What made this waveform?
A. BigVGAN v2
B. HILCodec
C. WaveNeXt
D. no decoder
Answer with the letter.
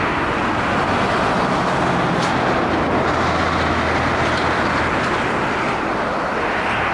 D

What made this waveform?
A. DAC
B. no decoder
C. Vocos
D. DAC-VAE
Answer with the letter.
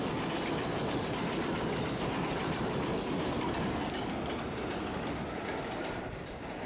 B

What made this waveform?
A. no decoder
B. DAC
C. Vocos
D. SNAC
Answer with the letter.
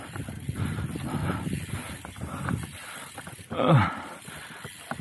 A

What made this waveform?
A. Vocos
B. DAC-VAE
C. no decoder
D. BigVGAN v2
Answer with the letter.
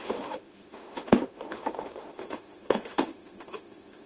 B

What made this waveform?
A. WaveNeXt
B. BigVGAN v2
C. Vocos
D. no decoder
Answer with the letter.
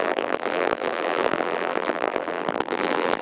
B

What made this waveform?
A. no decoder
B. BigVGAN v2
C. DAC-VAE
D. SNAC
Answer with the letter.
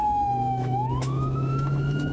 C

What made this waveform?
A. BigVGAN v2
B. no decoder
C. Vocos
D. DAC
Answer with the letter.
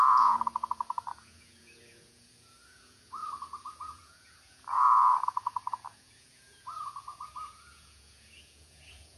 C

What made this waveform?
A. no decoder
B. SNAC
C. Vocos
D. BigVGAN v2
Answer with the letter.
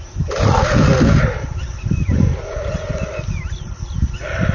D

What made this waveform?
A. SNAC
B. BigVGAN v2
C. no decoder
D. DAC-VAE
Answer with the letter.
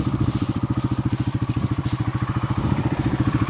B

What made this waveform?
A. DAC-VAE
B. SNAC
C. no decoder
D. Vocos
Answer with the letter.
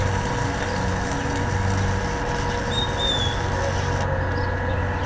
C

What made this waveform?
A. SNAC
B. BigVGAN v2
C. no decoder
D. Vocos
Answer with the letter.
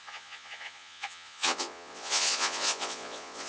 D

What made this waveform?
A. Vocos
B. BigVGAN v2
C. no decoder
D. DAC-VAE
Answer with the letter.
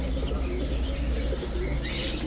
C